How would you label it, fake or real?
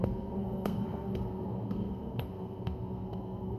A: fake